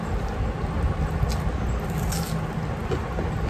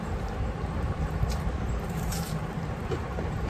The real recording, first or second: first